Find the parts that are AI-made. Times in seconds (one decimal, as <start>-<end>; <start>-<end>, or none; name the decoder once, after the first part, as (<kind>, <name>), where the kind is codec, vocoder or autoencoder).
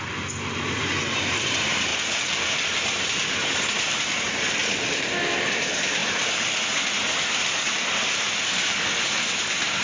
none